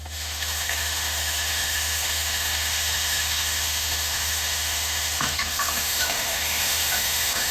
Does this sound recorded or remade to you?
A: remade